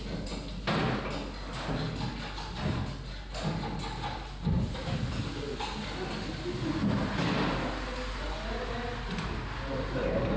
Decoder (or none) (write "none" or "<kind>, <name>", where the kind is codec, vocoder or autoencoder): none